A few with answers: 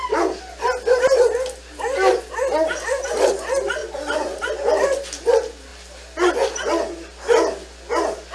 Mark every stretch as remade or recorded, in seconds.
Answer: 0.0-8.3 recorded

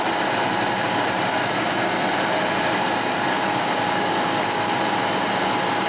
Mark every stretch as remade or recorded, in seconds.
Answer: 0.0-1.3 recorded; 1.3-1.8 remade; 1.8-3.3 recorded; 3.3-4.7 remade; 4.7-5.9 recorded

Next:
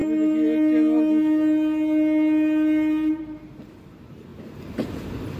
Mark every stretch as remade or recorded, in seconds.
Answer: 0.0-3.2 recorded; 3.2-5.4 remade

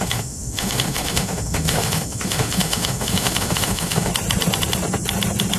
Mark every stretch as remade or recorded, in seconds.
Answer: 0.0-4.1 remade; 4.1-5.6 recorded

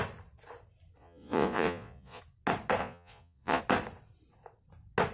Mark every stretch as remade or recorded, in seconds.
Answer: 0.0-1.0 recorded; 1.0-2.2 remade; 2.2-2.8 recorded; 2.8-3.6 remade; 3.6-5.1 recorded